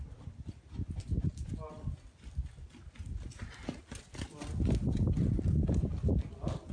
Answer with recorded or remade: recorded